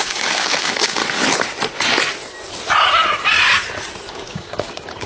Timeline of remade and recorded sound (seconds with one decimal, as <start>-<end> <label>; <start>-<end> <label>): 0.0-1.0 remade; 1.0-4.1 recorded; 4.1-5.1 remade